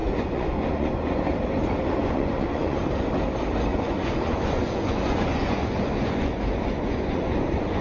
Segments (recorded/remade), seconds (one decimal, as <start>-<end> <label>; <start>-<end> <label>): 0.0-1.2 remade; 1.2-2.0 recorded; 2.0-2.8 remade; 2.8-3.7 recorded; 3.7-7.8 remade